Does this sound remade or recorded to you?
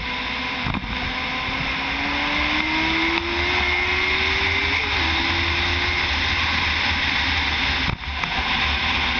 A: recorded